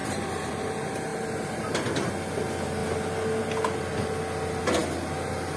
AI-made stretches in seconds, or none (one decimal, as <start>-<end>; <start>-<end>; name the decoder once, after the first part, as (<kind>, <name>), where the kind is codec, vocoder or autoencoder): 0.0-0.7 (vocoder, BigVGAN v2); 1.1-2.1